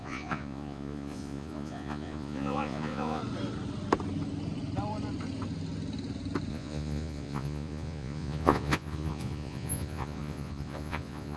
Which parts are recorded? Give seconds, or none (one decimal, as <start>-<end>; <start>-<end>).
3.2-6.5